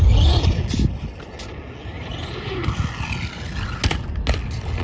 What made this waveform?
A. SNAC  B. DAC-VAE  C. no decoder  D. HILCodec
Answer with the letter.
C